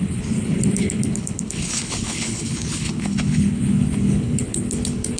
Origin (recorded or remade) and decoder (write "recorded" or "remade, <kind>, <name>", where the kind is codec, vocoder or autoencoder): remade, codec, HILCodec